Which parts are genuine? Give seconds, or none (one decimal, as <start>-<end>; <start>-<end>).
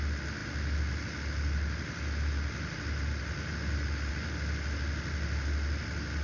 0.0-6.2